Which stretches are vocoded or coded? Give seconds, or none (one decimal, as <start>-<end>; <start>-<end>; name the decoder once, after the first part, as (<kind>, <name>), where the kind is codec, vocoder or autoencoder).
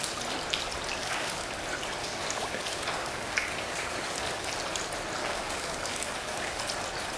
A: 1.0-1.5 (codec, DAC); 2.0-4.5; 5.2-6.6